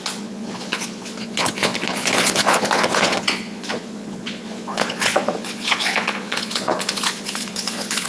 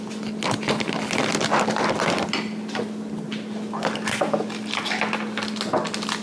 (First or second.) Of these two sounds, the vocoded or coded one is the first